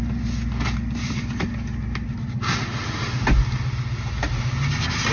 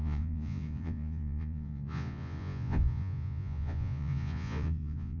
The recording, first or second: first